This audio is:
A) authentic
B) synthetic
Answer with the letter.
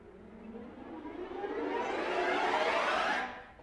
A